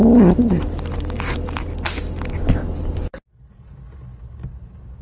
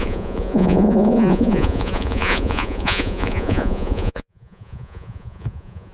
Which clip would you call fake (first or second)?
second